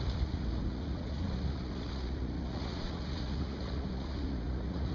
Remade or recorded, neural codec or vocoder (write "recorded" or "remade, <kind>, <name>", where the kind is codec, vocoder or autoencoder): remade, vocoder, Vocos